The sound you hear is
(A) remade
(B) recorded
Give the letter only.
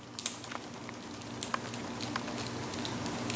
B